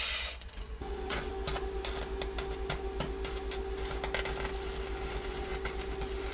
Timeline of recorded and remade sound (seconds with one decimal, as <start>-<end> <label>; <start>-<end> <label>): 0.0-1.3 remade; 1.3-5.1 recorded; 5.1-5.5 remade; 5.5-6.3 recorded